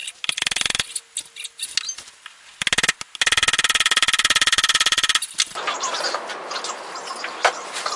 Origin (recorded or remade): recorded